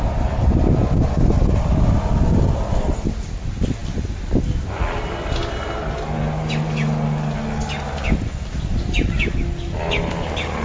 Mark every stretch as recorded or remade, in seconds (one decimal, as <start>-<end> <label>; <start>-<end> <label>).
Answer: 0.0-10.6 recorded